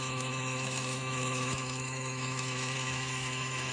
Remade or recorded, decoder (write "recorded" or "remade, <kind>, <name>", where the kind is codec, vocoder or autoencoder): remade, autoencoder, DAC-VAE